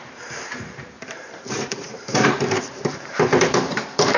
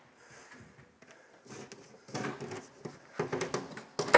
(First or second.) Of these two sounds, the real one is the second